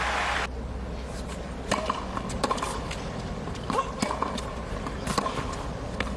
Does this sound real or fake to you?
real